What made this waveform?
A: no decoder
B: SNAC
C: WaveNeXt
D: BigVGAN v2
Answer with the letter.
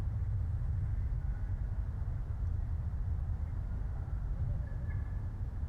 A